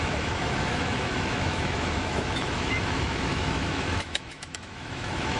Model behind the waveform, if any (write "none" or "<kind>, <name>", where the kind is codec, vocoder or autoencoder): autoencoder, DAC-VAE